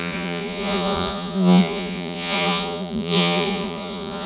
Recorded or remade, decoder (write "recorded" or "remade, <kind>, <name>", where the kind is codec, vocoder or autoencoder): remade, vocoder, Vocos